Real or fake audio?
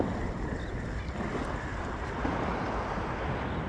real